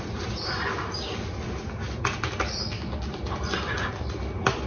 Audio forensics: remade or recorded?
recorded